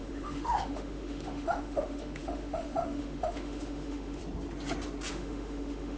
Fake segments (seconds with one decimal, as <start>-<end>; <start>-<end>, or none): 0.0-4.2; 5.1-6.0